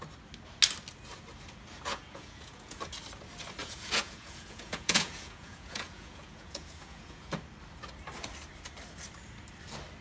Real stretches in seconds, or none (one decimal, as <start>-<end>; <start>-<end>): 0.0-1.9; 2.8-3.6; 7.3-10.0